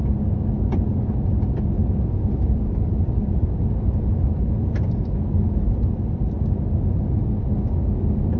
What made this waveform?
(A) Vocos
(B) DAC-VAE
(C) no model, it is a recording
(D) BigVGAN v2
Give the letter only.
C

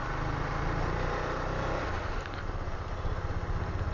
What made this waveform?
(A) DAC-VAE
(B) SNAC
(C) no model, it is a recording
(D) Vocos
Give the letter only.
C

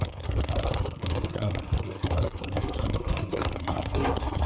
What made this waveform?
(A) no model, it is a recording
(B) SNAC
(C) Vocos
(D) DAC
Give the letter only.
B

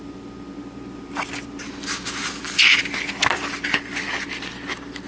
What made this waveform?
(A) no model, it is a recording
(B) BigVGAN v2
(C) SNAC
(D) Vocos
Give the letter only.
A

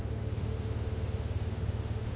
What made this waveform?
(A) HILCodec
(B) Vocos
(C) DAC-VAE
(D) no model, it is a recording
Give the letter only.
C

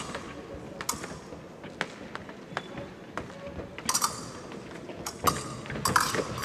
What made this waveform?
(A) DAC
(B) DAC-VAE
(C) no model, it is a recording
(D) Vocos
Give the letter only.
C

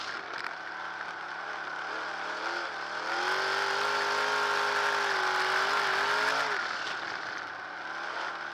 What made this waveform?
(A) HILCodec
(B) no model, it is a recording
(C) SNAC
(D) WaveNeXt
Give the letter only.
B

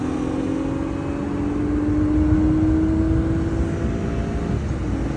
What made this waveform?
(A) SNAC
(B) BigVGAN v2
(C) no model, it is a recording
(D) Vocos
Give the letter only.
C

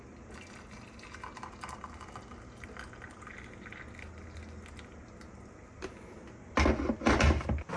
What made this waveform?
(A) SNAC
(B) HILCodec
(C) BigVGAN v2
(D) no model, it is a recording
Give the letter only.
D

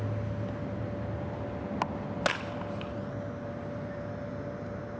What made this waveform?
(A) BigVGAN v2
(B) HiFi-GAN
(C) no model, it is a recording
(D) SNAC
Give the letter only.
C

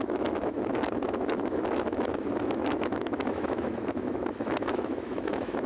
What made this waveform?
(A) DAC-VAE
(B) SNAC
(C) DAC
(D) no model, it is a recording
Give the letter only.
A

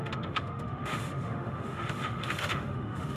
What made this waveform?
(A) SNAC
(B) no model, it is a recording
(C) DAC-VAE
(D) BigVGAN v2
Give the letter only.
C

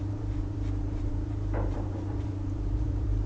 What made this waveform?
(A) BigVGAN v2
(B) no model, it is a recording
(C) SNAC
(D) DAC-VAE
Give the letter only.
A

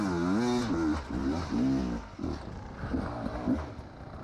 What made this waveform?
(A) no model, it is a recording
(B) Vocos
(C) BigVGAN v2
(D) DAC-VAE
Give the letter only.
A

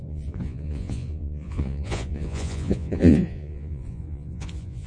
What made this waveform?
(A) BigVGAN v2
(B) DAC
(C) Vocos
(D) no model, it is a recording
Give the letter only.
C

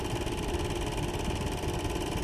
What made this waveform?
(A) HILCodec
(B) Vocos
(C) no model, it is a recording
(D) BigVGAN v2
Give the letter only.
C